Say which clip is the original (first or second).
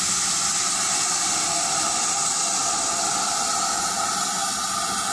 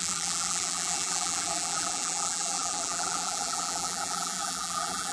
first